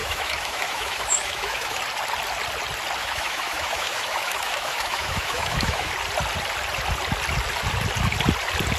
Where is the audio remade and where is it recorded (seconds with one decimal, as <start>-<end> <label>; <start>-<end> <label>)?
0.0-1.8 remade; 1.8-3.0 recorded; 3.0-5.9 remade; 5.9-8.8 recorded